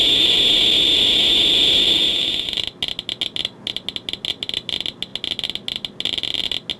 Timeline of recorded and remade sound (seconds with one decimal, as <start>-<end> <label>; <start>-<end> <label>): 0.0-6.8 recorded